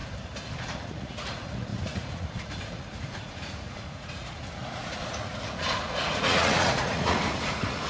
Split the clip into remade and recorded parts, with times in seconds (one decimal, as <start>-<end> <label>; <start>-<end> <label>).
0.0-0.6 recorded; 0.6-7.9 remade